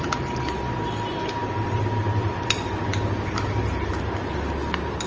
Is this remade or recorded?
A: recorded